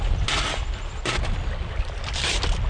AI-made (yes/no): no